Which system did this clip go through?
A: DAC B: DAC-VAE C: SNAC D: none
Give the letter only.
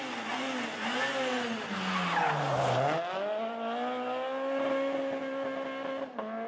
D